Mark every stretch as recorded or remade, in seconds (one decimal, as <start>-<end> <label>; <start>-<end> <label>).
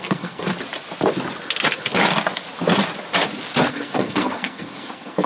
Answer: 0.0-0.5 remade; 0.5-3.7 recorded; 3.7-5.3 remade